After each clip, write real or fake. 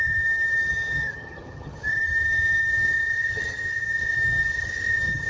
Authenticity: fake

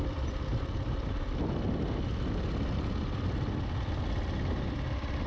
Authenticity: real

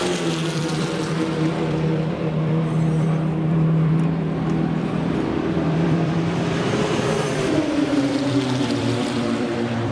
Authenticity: fake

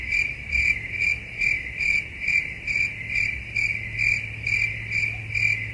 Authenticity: real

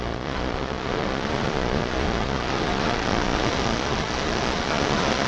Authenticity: fake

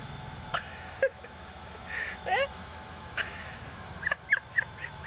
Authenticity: fake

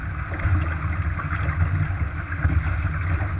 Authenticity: real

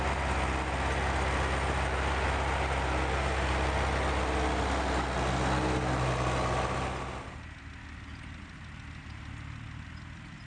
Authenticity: real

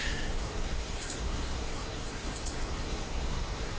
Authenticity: fake